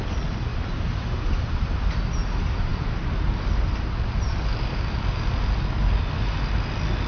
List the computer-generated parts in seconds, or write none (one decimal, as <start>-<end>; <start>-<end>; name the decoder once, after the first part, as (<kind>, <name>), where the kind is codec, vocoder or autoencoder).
0.5-2.3 (vocoder, BigVGAN v2)